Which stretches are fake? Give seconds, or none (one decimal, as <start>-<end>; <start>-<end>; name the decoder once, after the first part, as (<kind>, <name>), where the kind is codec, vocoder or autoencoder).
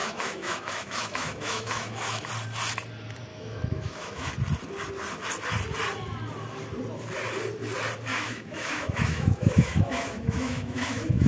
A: 0.0-2.3 (autoencoder, DAC-VAE); 3.3-4.3; 8.1-11.3